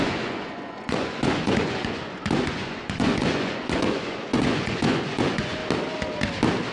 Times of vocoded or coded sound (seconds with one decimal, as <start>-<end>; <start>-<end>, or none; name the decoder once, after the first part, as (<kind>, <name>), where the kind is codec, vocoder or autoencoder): 0.0-5.6 (vocoder, Vocos)